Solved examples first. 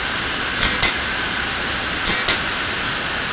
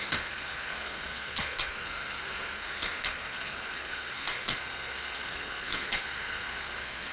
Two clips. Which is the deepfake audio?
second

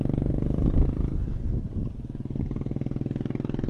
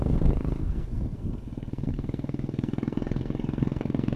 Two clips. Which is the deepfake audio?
second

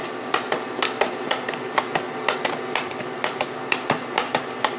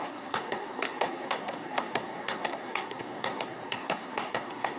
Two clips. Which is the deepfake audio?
second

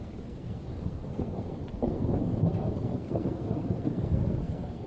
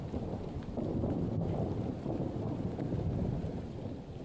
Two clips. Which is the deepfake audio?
first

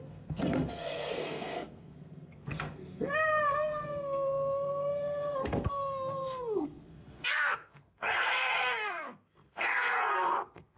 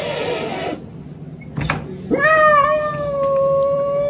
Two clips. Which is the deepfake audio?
first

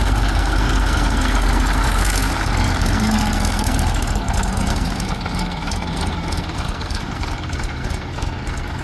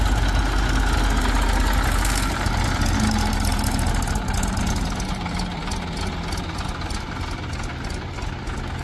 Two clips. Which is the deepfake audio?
first